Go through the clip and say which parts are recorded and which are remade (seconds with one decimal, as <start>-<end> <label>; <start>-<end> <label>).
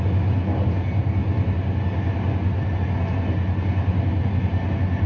0.0-5.1 recorded